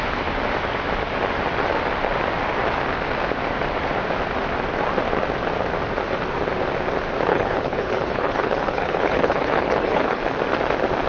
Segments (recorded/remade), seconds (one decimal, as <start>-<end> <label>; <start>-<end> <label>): 0.0-7.3 recorded; 7.3-10.2 remade; 10.2-11.1 recorded